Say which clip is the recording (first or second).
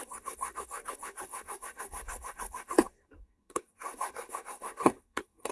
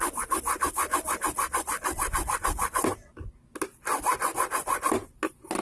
second